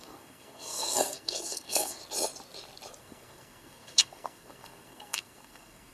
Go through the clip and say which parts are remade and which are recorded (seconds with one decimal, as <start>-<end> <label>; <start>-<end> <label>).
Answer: 0.0-2.0 remade; 2.0-3.0 recorded; 3.0-5.9 remade

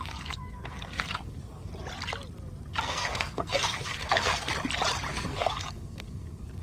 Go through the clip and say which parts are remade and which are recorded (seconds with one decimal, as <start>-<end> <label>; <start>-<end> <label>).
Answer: 0.0-1.7 remade; 1.7-2.7 recorded; 2.7-4.5 remade; 4.5-5.1 recorded; 5.1-6.6 remade